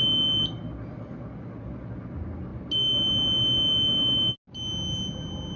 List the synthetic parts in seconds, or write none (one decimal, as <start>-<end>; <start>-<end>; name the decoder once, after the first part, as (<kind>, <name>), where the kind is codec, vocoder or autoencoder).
none